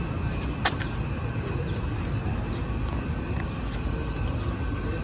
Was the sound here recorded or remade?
recorded